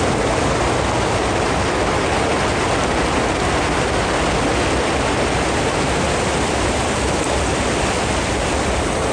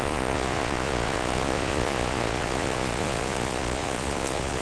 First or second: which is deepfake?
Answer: second